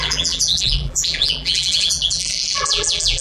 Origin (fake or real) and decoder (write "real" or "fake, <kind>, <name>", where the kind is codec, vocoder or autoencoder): fake, vocoder, BigVGAN v2